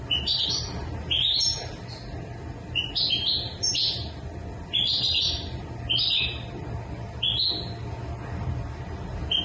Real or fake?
real